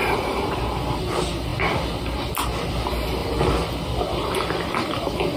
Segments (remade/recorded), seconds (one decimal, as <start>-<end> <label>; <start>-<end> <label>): 0.0-5.4 recorded